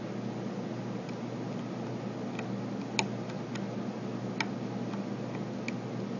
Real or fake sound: real